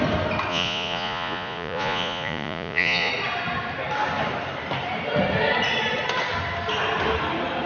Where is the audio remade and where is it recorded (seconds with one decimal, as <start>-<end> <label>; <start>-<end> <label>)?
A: 0.0-0.5 recorded; 0.5-3.1 remade; 3.1-7.7 recorded